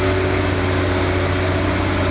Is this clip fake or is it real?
real